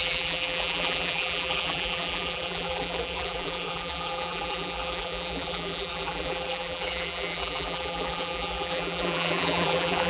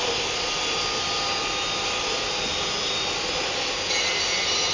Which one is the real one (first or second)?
second